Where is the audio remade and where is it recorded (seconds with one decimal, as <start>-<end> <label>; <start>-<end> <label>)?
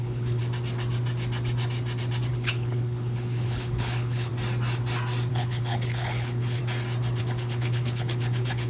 0.0-0.4 remade; 0.4-2.3 recorded; 2.3-4.3 remade; 4.3-5.3 recorded; 5.3-6.6 remade; 6.6-7.2 recorded; 7.2-8.7 remade